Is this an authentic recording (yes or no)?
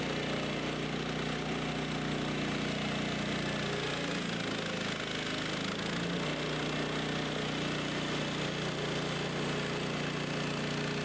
yes